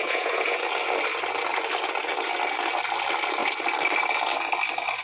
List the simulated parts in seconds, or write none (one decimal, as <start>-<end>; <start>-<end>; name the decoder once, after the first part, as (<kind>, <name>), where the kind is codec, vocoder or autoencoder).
0.0-0.6 (vocoder, Vocos)